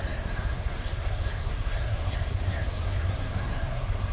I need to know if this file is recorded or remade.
remade